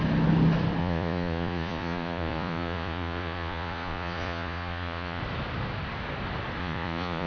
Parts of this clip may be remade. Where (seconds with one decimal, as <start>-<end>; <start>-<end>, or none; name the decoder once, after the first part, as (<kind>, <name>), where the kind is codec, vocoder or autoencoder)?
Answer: 0.8-5.2 (vocoder, Vocos); 6.6-7.3